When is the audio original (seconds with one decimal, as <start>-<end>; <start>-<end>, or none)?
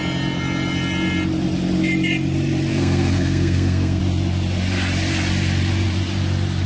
0.0-2.7; 4.0-6.7